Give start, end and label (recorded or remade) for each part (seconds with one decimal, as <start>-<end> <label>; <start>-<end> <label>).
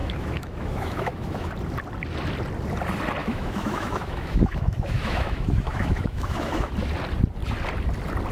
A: 0.0-1.5 remade; 1.5-3.2 recorded; 3.2-6.7 remade; 6.7-8.3 recorded